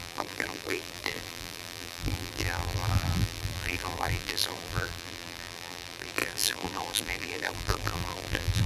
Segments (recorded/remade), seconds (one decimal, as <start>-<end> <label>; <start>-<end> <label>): 0.0-8.7 remade